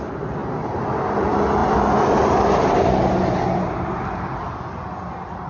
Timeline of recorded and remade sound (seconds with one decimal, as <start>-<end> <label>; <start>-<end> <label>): 0.0-5.5 recorded